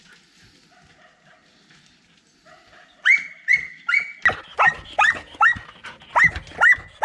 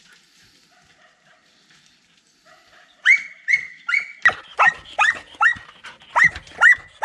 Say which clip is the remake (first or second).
second